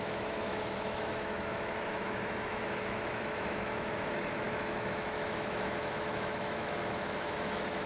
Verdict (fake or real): fake